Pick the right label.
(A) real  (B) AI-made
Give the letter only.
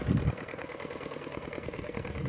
B